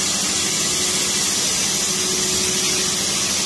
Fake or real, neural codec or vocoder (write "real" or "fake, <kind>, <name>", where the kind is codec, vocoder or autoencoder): real